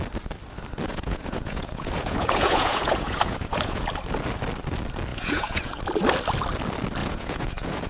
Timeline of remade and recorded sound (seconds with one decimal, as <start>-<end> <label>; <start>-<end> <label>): 0.0-0.9 recorded; 0.9-3.8 remade; 3.8-5.1 recorded; 5.1-5.8 remade; 5.8-7.0 recorded; 7.0-7.9 remade

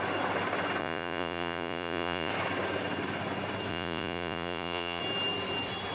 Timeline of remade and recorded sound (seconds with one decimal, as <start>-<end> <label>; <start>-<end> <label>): 0.0-0.8 recorded; 0.8-2.3 remade; 2.3-3.7 recorded; 3.7-5.0 remade; 5.0-5.9 recorded

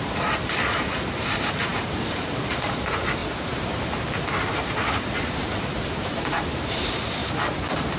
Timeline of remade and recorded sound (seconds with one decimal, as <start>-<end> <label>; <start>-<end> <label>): 0.0-7.2 remade; 7.2-8.0 recorded

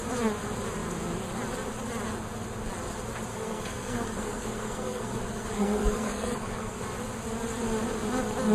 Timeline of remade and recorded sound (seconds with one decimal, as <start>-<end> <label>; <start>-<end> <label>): 0.0-3.3 recorded; 3.3-6.8 remade; 6.8-8.5 recorded

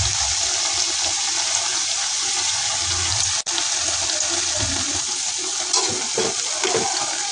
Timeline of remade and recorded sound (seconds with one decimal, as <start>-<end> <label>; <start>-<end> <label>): 0.0-2.1 recorded; 2.1-2.8 remade; 2.8-7.3 recorded

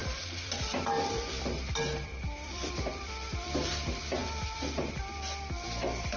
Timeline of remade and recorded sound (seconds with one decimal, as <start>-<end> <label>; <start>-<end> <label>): 0.0-3.7 remade; 3.7-4.2 recorded; 4.2-5.0 remade; 5.0-6.2 recorded

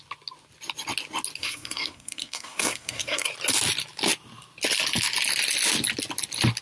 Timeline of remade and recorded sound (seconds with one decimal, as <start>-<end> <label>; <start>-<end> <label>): 0.0-1.4 recorded; 1.4-3.3 remade; 3.3-6.6 recorded